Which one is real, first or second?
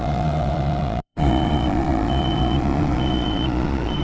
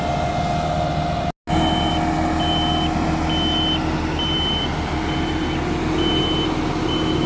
second